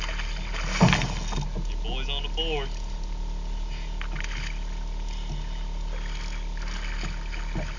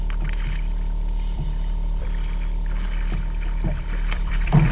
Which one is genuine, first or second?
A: first